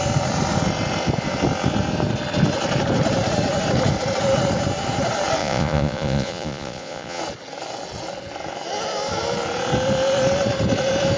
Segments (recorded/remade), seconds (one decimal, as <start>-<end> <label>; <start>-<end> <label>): 0.0-5.4 recorded; 5.4-7.2 remade; 7.2-11.2 recorded